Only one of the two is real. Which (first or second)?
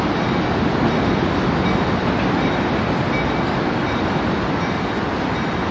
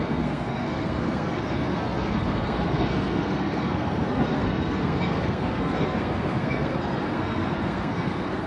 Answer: first